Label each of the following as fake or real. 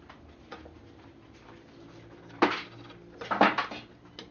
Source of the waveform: real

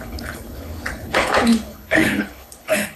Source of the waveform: fake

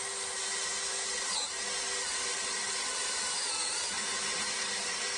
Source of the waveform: real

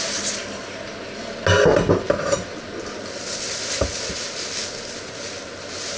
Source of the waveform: real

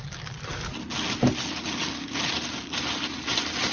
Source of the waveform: real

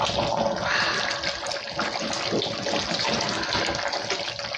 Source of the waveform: real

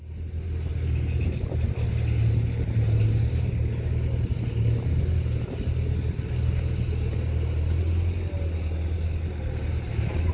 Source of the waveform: real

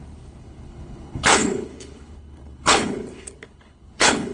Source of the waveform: fake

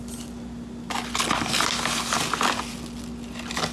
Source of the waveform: real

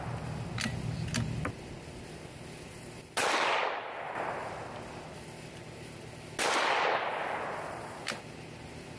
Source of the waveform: real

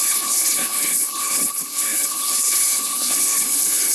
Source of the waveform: fake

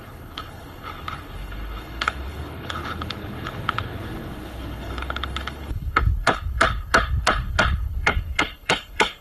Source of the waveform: fake